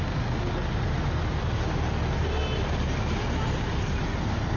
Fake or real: real